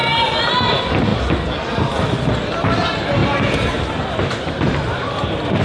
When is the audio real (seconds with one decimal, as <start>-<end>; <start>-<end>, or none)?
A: 0.0-5.6